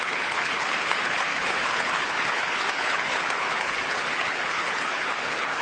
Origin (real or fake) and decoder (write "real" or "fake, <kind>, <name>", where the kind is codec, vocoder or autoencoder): fake, codec, HILCodec